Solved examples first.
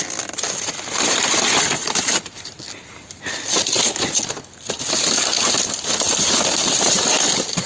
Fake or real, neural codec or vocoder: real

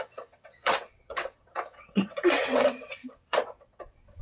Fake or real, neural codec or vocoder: fake, vocoder, WaveNeXt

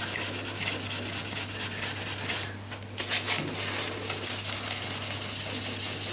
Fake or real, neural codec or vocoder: real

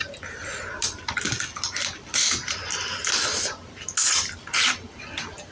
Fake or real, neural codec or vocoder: real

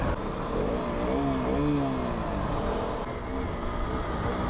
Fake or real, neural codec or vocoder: real